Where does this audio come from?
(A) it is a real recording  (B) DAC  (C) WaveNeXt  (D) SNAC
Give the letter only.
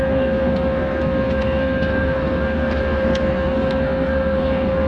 D